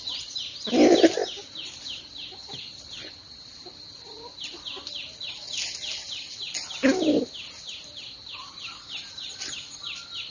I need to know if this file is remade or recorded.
recorded